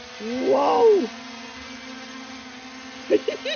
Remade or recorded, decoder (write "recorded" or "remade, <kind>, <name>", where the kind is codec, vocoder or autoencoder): recorded